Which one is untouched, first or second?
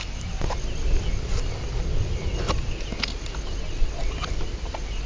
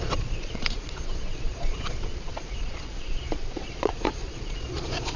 first